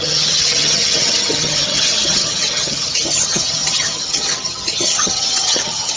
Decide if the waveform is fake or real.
fake